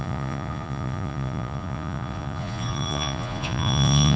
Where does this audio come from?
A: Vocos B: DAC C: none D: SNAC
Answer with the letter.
A